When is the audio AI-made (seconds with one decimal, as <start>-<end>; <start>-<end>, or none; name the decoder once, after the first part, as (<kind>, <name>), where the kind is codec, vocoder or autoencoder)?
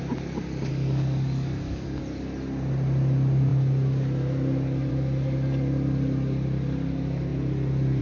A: 0.7-2.0 (codec, DAC)